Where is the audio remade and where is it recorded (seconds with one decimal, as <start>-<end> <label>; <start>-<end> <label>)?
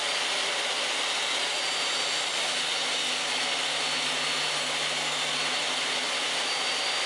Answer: 0.0-7.1 recorded